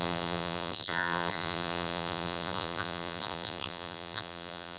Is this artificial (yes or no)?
yes